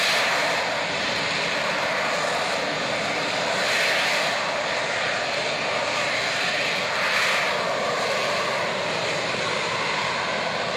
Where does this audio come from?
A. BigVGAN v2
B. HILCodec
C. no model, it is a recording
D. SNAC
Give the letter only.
C